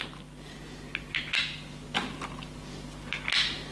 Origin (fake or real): real